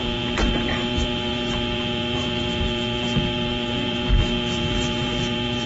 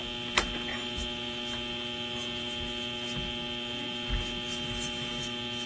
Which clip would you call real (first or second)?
second